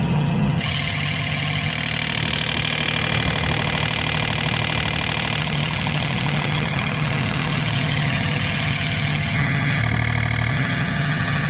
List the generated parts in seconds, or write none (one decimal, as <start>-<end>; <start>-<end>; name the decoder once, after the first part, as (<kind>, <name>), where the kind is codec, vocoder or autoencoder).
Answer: 0.0-1.7 (vocoder, HiFi-GAN); 5.4-9.8; 10.5-11.5